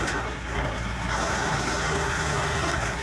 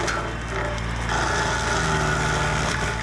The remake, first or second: first